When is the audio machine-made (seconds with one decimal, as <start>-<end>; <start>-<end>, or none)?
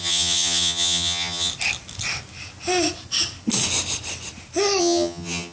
0.0-1.5; 4.8-5.5